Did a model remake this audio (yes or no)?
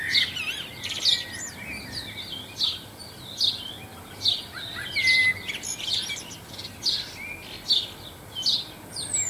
no